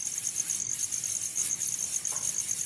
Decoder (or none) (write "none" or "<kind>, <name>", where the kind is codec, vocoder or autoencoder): none